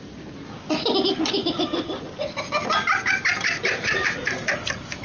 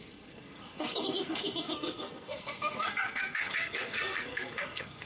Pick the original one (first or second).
first